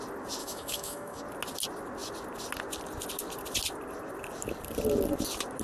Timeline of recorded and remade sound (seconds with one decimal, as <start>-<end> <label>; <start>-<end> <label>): 0.0-0.4 recorded; 0.4-1.2 remade; 1.2-5.6 recorded